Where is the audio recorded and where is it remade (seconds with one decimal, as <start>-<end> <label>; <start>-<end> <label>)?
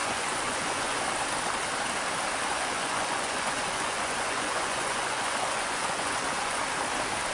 0.0-1.1 remade; 1.1-2.5 recorded; 2.5-6.6 remade; 6.6-7.3 recorded